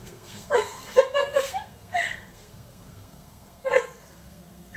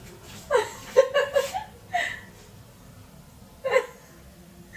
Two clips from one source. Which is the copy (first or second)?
first